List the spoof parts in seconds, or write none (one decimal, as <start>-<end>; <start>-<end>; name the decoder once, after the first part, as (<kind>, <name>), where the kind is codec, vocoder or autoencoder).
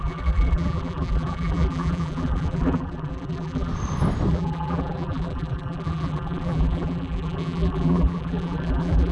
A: 0.0-3.7 (vocoder, BigVGAN v2); 4.3-9.1